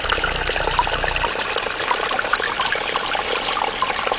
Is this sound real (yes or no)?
yes